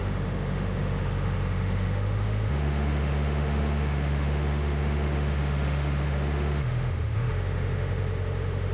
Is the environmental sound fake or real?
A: fake